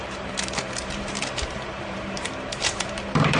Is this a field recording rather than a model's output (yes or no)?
no